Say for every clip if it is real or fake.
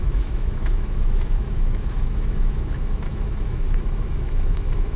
fake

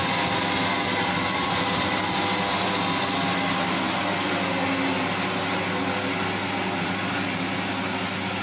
real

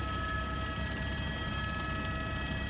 real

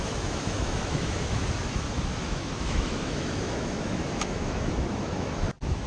fake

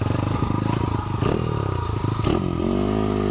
real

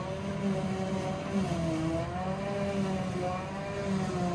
real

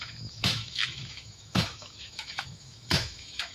fake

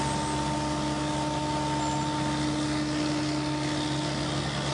real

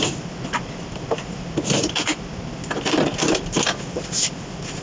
real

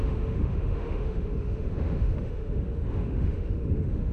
fake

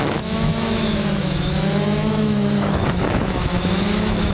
fake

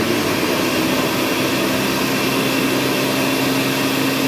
real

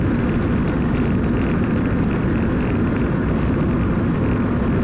real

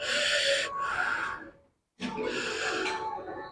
real